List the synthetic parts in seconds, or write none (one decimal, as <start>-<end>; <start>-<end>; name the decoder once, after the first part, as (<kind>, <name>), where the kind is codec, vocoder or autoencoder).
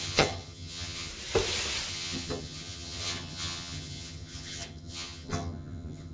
0.0-1.1 (vocoder, HiFi-GAN); 1.9-6.1